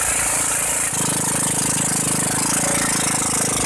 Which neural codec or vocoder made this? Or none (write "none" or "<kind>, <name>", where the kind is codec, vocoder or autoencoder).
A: none